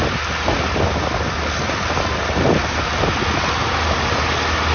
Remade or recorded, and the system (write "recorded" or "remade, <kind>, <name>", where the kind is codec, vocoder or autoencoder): recorded